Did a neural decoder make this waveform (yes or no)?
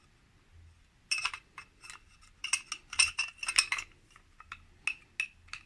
no